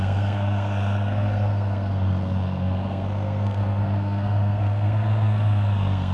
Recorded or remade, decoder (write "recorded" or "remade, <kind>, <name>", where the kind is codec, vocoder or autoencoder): remade, codec, SNAC